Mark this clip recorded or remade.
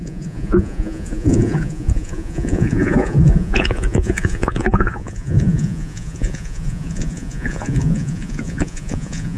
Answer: remade